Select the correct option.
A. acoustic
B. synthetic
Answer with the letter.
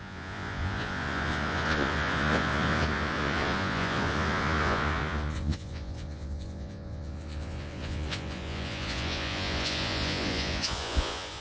B